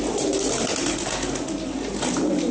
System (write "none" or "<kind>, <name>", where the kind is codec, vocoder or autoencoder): none